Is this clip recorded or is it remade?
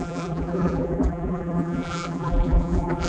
remade